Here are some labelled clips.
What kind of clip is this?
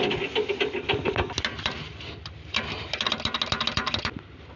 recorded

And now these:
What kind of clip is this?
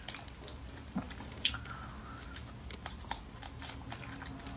recorded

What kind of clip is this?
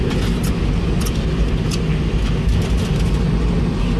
recorded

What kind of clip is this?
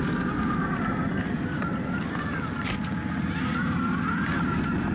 recorded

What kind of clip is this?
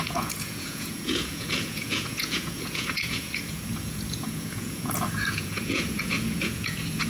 remade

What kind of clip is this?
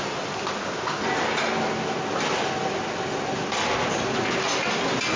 recorded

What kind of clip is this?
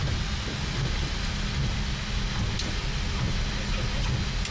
recorded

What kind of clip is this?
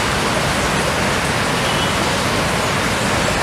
recorded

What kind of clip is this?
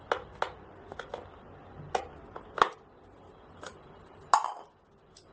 recorded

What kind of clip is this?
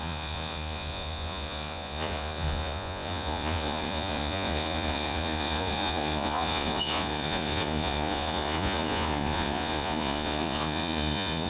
remade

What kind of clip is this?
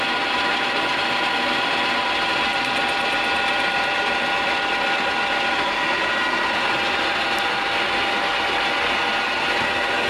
recorded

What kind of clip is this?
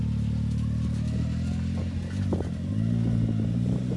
recorded